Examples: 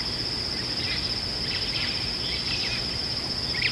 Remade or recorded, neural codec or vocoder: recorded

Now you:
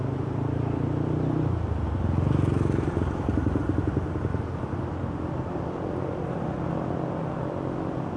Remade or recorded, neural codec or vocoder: recorded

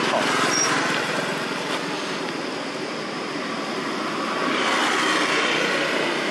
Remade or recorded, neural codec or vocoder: recorded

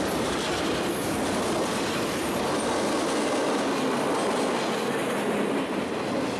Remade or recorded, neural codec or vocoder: recorded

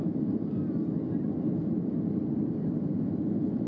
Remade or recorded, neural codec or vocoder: recorded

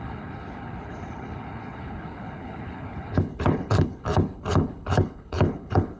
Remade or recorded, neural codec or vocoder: remade, codec, HILCodec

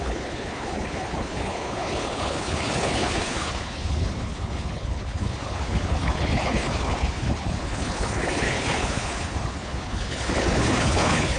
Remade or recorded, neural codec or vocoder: remade, codec, HILCodec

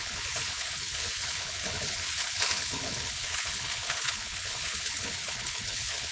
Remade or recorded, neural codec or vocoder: remade, codec, HILCodec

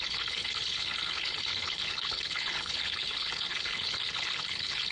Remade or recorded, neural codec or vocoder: remade, codec, HILCodec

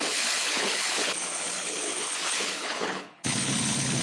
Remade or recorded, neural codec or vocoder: remade, codec, HILCodec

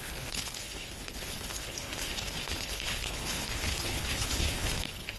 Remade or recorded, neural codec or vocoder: remade, codec, HILCodec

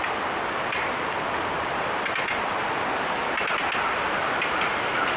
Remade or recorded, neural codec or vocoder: recorded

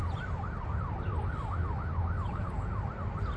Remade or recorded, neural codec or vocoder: recorded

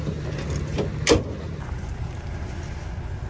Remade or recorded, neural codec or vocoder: recorded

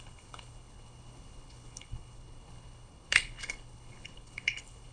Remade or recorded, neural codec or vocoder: remade, codec, HILCodec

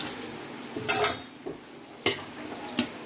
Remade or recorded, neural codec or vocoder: recorded